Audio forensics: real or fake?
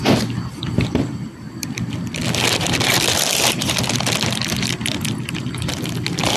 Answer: fake